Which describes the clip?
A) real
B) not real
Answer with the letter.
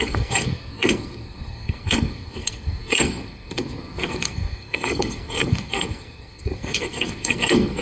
B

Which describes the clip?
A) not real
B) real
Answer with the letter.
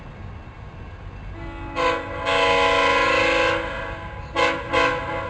B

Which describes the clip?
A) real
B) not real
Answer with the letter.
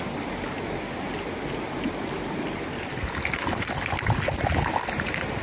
A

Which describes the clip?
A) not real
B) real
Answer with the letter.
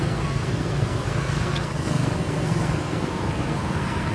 A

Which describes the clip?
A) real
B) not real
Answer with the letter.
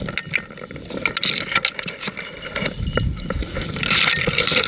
A